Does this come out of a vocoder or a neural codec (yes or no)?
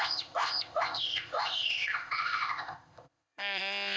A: yes